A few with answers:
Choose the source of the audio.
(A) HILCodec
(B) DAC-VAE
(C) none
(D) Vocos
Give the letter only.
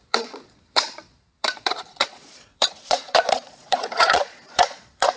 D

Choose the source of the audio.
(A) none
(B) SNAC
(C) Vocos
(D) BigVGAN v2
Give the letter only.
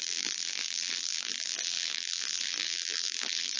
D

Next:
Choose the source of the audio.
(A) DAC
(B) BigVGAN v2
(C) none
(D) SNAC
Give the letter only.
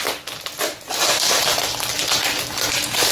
C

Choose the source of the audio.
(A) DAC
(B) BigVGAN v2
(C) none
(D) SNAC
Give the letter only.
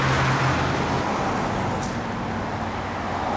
C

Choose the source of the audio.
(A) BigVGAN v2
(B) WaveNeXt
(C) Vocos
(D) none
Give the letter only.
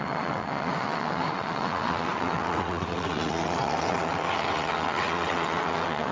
B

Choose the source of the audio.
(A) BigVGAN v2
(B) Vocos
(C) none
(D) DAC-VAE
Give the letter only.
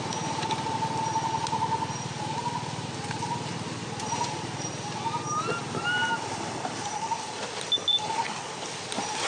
C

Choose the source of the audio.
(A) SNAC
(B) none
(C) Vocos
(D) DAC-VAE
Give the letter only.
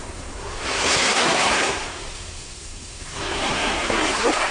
A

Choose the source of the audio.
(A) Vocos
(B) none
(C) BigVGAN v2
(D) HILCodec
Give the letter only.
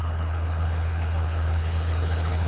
D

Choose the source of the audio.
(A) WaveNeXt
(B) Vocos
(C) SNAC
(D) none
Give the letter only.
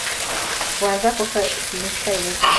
D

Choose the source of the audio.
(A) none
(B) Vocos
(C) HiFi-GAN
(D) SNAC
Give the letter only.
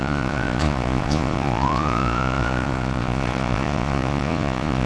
B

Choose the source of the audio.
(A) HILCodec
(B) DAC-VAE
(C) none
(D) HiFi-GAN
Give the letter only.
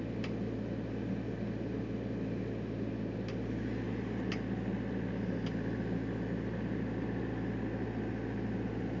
C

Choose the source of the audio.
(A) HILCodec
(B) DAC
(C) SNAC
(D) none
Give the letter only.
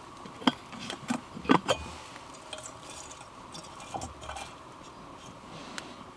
D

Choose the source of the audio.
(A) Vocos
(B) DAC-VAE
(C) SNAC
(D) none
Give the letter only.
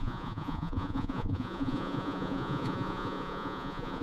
A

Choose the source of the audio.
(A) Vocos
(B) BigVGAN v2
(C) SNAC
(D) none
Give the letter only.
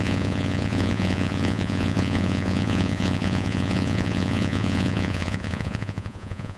A